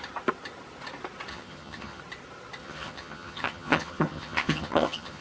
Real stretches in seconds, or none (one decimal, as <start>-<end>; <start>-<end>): 0.0-1.3; 2.0-2.6